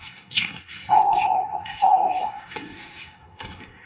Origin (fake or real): fake